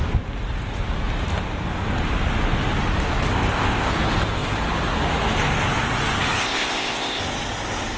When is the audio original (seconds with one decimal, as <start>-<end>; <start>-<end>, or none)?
0.0-3.3; 3.9-6.4; 7.2-8.0